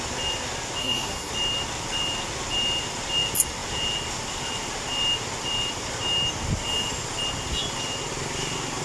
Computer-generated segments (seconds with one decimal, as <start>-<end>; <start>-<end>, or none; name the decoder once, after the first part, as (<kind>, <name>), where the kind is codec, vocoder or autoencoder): 0.8-1.3 (codec, SNAC)